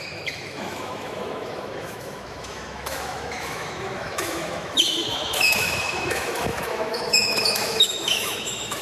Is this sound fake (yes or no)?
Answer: yes